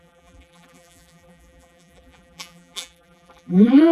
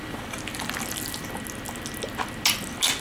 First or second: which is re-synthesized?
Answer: first